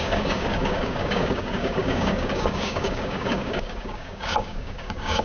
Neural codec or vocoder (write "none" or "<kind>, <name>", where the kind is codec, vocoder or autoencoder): codec, DAC